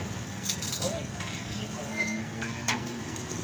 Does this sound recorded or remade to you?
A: remade